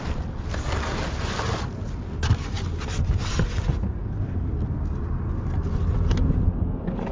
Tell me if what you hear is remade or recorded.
recorded